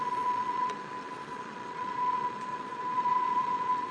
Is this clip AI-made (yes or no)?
yes